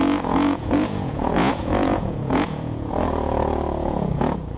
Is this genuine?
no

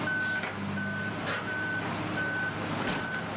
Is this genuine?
yes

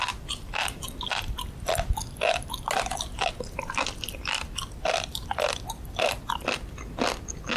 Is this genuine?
yes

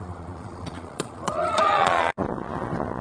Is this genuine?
no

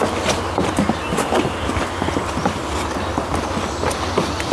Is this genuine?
yes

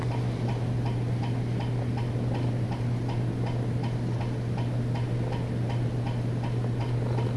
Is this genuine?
yes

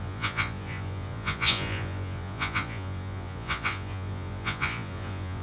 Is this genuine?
no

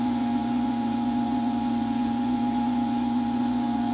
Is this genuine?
no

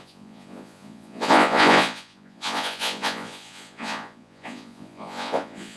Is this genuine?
no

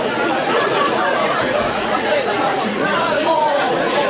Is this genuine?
no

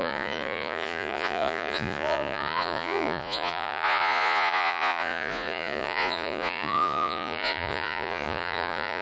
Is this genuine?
no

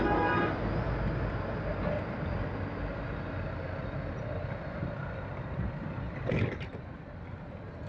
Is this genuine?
yes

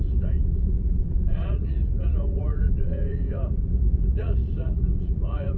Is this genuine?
no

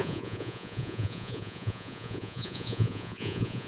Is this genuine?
no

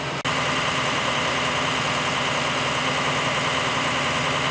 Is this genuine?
yes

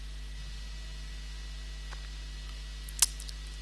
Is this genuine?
yes